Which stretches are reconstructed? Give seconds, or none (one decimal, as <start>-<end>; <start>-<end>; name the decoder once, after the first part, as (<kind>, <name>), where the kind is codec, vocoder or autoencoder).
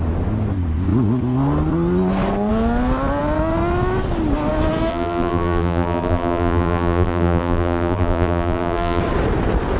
4.9-9.0 (vocoder, BigVGAN v2)